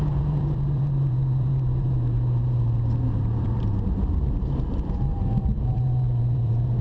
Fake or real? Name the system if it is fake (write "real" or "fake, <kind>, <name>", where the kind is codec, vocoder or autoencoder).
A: fake, vocoder, BigVGAN v2